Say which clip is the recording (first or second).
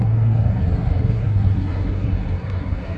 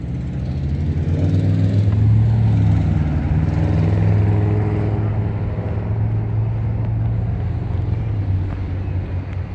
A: second